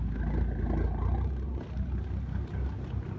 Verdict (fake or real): real